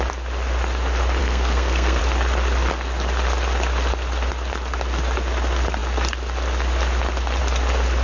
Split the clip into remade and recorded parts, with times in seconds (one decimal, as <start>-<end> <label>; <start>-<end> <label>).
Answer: 0.0-1.2 recorded; 1.2-2.0 remade; 2.0-8.0 recorded